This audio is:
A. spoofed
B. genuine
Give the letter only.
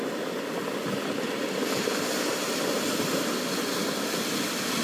B